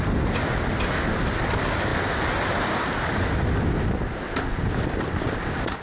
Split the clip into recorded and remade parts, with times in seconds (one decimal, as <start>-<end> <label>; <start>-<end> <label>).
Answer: 0.0-5.8 recorded